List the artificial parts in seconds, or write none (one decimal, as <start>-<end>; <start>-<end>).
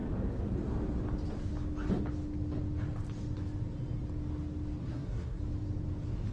4.8-5.4